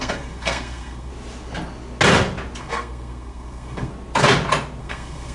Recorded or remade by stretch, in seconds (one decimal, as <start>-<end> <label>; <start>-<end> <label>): 0.0-1.1 remade; 1.1-2.6 recorded; 2.6-3.9 remade; 3.9-4.8 recorded; 4.8-5.3 remade

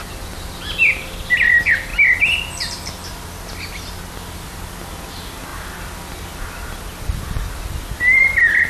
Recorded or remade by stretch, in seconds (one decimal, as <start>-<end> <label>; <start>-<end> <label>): 0.0-8.7 recorded

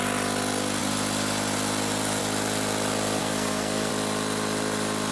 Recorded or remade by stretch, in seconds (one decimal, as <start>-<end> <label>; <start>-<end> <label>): 0.0-3.2 recorded; 3.2-3.9 remade; 3.9-5.1 recorded

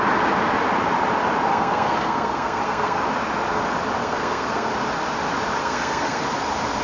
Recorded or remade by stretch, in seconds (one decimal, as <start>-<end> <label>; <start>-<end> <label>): 0.0-1.5 recorded; 1.5-3.0 remade; 3.0-4.0 recorded; 4.0-4.7 remade; 4.7-5.6 recorded; 5.6-6.2 remade; 6.2-6.8 recorded

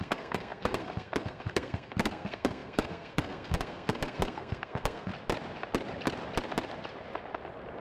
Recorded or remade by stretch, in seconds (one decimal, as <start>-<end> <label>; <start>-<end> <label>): 0.0-5.1 remade; 5.1-7.8 recorded

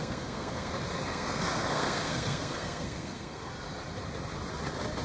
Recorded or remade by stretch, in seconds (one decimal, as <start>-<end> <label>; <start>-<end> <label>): 0.0-0.7 remade; 0.7-1.1 recorded; 1.1-3.5 remade; 3.5-5.0 recorded

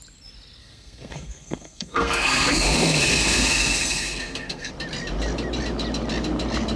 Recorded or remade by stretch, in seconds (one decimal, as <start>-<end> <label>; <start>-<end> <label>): 0.0-0.6 recorded; 0.6-4.7 remade; 4.7-6.8 recorded

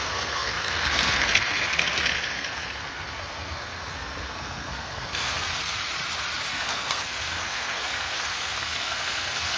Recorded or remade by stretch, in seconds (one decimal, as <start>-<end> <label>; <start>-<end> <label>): 0.0-5.8 remade; 5.8-6.5 recorded; 6.5-9.6 remade